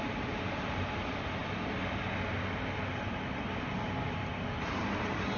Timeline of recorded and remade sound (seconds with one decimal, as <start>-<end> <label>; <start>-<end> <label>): 0.0-5.4 recorded